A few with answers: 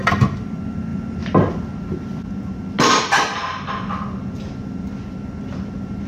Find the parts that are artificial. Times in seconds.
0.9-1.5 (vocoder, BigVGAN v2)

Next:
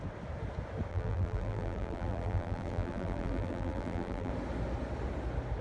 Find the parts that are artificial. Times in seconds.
0.9-4.3 (vocoder, BigVGAN v2)